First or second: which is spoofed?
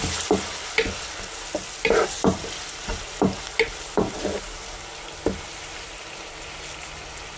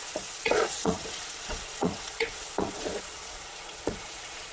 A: second